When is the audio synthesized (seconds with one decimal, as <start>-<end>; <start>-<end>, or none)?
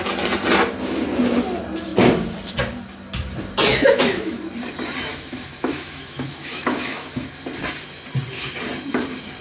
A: 3.7-4.4; 5.1-7.3